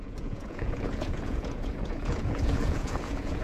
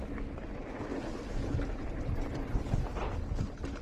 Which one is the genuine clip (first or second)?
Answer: second